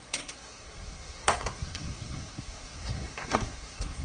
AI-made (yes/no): yes